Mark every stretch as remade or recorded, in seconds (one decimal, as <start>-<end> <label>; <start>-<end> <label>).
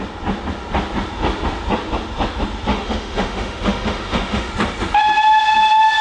0.0-2.7 recorded; 2.7-4.5 remade; 4.5-6.0 recorded